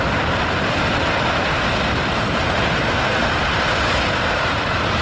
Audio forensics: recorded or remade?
recorded